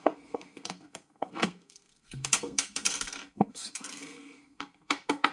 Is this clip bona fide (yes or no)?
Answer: no